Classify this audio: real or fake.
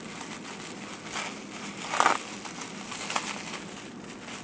real